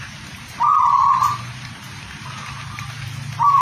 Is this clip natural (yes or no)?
no